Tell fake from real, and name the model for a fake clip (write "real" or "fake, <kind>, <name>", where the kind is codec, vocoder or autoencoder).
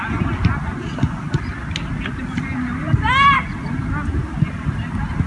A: real